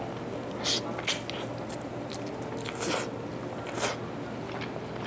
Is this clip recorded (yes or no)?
yes